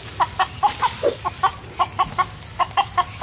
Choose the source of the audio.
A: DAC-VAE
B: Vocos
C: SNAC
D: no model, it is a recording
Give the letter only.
D